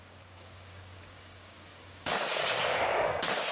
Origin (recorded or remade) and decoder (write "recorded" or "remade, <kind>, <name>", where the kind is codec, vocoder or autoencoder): remade, codec, DAC